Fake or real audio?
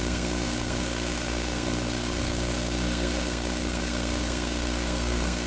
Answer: fake